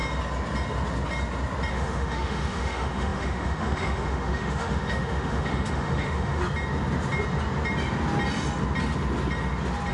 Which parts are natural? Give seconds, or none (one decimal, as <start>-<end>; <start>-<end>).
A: 0.0-1.7; 6.4-9.9